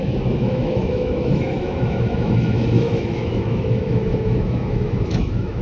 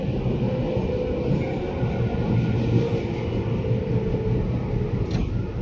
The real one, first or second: second